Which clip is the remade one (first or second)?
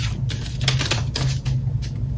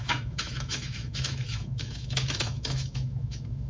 second